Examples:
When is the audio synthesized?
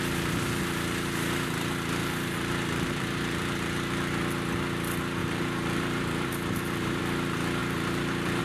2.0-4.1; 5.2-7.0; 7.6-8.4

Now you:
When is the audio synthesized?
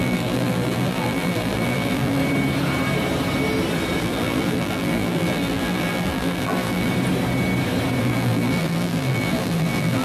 0.0-2.2; 4.0-6.9; 8.0-10.0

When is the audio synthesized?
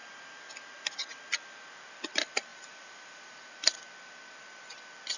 2.5-3.5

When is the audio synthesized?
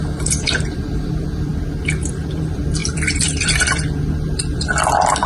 0.0-1.5; 2.1-5.3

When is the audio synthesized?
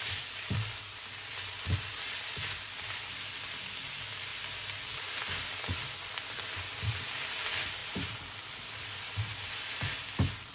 none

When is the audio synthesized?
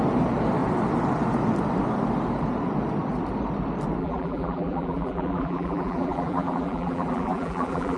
4.0-8.0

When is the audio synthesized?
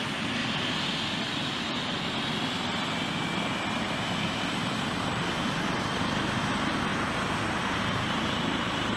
0.0-0.4; 4.9-9.0